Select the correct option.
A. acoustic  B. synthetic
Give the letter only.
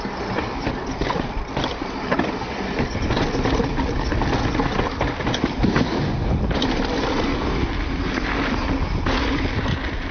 A